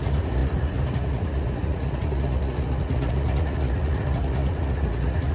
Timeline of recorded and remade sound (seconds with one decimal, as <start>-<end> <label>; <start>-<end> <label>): 0.0-5.3 remade